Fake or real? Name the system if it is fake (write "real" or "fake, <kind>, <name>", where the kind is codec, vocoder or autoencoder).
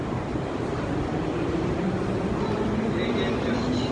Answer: fake, vocoder, BigVGAN v2